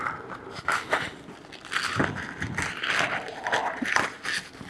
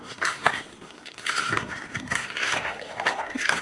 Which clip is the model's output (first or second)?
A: second